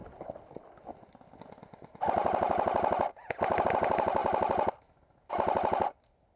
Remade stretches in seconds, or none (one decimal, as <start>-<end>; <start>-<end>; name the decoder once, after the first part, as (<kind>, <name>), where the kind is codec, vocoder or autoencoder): none

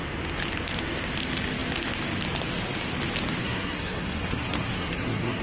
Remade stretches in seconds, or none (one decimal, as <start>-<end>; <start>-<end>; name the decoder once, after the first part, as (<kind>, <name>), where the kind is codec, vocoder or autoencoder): 3.4-5.4 (codec, SNAC)

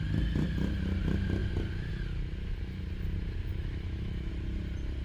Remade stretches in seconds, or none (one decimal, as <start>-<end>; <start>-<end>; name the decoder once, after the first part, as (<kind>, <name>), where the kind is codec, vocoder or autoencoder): 3.5-4.3 (autoencoder, DAC-VAE)

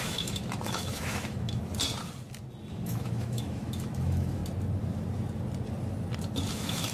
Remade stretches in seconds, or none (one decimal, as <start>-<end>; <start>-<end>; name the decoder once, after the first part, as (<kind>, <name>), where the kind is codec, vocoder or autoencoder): 0.0-1.6 (autoencoder, DAC-VAE); 2.7-4.4; 6.5-6.9